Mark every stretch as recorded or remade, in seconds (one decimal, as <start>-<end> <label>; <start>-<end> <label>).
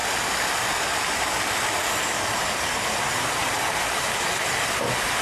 0.0-5.2 recorded